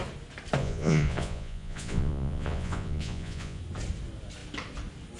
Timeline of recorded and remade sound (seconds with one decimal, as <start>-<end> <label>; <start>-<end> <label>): 0.0-0.6 recorded; 0.6-3.6 remade; 3.6-5.2 recorded